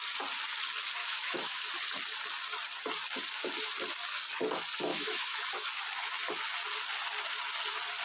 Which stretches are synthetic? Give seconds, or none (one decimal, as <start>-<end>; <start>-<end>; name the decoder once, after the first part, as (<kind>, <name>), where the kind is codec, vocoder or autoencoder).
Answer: 1.0-1.7 (autoencoder, DAC-VAE); 4.9-5.4